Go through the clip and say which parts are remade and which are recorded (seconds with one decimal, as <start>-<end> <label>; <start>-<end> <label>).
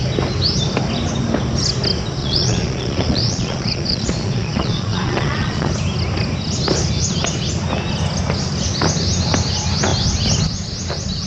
0.0-2.2 recorded; 2.2-5.7 remade; 5.7-11.3 recorded